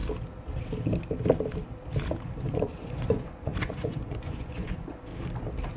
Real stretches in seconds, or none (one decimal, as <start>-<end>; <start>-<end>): 0.0-2.2; 5.1-5.8

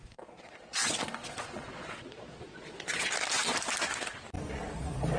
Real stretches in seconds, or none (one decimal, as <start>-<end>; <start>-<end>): 3.1-5.2

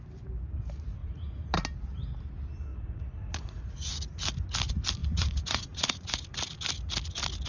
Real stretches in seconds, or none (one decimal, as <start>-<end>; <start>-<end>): 0.0-1.0; 1.6-2.7; 3.7-5.0; 6.1-7.5